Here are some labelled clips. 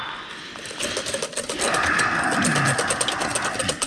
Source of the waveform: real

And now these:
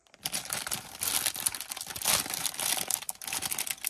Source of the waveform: real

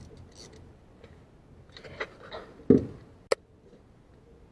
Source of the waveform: real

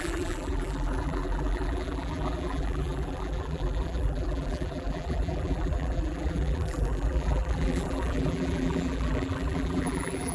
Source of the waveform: fake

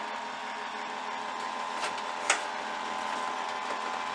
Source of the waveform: real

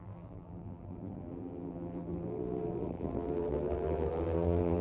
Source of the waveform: fake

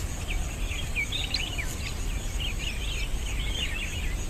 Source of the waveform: real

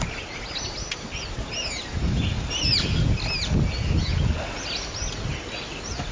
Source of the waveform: real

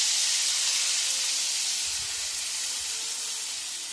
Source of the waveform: real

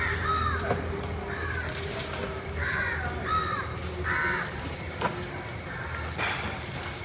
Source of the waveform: real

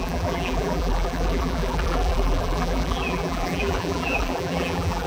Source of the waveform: fake